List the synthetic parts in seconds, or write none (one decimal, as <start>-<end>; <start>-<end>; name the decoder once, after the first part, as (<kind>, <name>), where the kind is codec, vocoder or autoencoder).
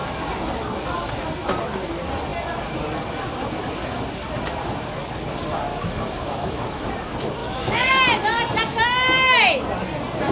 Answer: 5.7-6.9 (autoencoder, DAC-VAE); 7.4-8.0